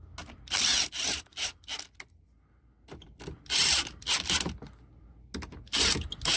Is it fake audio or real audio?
real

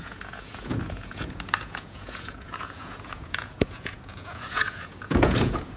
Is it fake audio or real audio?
fake